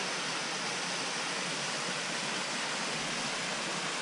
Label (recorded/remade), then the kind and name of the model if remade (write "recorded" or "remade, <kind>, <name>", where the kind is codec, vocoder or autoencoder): recorded